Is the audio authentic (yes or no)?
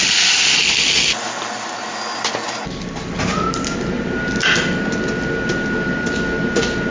yes